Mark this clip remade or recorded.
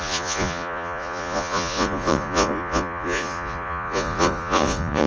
remade